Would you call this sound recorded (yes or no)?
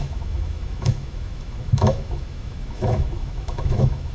no